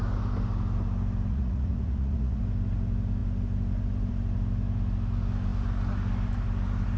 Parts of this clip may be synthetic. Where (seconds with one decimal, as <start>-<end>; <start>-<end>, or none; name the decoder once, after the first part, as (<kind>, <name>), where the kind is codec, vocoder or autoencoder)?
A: 1.3-2.4 (vocoder, Vocos)